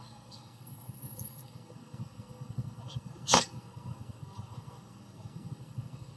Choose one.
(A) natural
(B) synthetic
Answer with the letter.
B